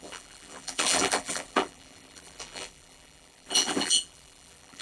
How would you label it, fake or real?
fake